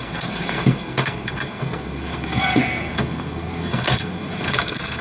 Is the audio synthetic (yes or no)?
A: yes